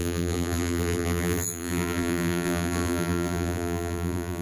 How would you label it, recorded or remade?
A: remade